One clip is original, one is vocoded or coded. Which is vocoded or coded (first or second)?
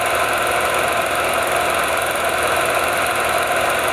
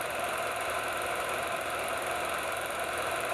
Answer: second